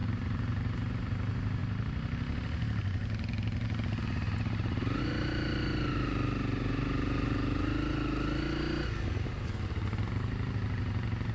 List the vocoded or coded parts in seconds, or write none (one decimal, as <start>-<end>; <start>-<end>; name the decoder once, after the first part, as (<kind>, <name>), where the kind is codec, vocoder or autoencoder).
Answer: 0.0-1.1 (vocoder, BigVGAN v2)